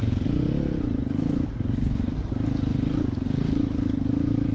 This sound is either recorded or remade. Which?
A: recorded